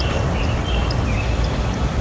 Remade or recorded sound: remade